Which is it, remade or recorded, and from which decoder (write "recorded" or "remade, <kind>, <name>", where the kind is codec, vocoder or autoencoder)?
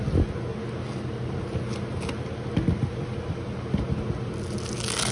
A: recorded